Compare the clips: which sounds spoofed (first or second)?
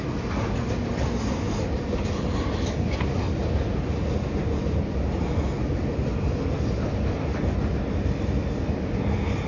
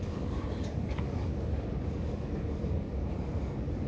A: second